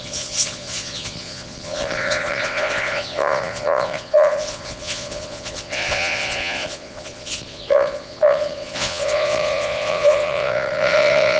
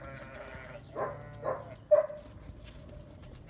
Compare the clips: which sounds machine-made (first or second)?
first